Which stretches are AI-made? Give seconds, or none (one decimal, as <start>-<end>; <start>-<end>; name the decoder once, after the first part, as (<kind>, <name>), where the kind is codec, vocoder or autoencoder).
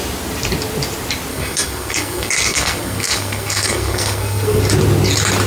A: 1.3-4.6 (codec, SNAC)